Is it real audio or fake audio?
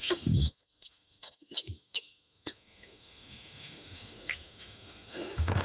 fake